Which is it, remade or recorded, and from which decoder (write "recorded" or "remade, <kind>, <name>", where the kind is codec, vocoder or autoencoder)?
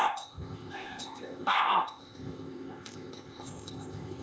remade, codec, ZipCodec